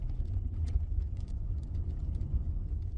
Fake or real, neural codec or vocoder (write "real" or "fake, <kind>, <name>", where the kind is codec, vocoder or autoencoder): fake, vocoder, Vocos